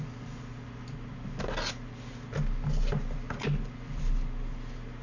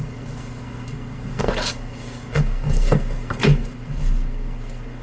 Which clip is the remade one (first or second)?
second